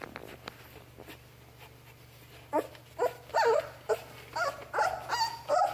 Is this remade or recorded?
recorded